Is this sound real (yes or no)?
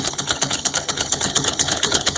no